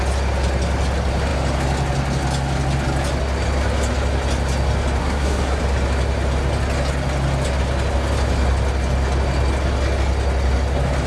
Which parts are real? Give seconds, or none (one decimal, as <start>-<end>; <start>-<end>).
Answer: 0.0-5.0; 5.6-11.1